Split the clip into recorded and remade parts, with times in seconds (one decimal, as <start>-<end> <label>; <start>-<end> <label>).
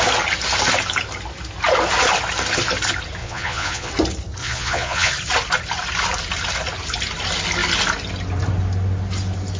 0.0-3.2 recorded; 3.2-3.9 remade; 3.9-4.4 recorded; 4.4-5.1 remade; 5.1-9.6 recorded